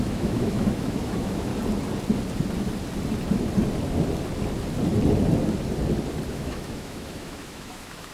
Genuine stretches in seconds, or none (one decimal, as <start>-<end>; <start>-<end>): 1.5-6.3